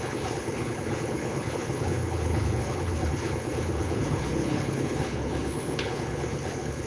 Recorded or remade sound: remade